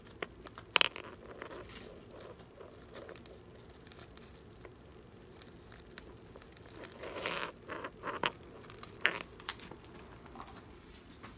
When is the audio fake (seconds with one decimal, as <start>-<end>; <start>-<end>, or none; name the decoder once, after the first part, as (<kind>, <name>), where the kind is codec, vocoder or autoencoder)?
none

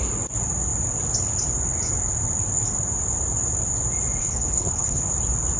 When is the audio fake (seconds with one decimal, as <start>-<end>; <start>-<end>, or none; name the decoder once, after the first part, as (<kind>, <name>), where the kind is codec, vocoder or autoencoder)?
4.2-5.0 (codec, HILCodec)

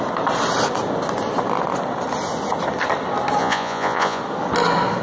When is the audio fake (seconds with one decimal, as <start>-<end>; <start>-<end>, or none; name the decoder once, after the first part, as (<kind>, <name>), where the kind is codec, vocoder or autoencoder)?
3.4-4.2 (vocoder, Vocos)

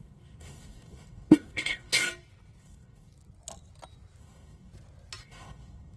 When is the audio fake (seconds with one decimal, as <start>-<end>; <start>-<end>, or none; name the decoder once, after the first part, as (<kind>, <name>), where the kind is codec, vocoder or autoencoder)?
0.0-2.1 (codec, DAC); 2.6-3.1; 4.2-4.7; 5.2-6.0

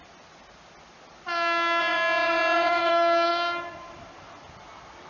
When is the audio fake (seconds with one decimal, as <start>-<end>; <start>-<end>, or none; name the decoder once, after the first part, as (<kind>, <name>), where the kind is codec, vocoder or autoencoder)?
1.8-2.9 (vocoder, Vocos)